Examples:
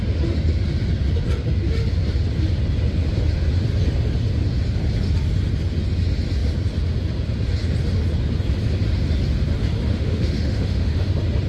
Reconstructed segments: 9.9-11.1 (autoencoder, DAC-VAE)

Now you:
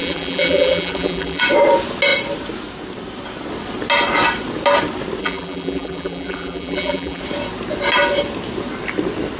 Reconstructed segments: 0.0-1.4 (vocoder, BigVGAN v2); 5.2-7.2

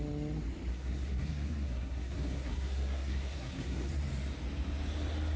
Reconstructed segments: 0.7-3.9 (codec, SNAC)

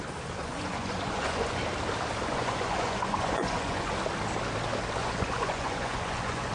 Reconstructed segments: 0.4-1.6 (vocoder, Vocos); 2.3-3.9; 5.0-6.5

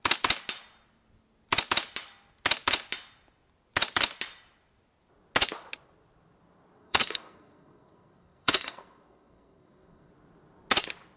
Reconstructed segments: 6.8-10.1 (codec, SNAC)

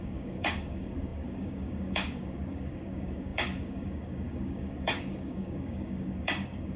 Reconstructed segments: 0.0-6.8 (codec, DAC)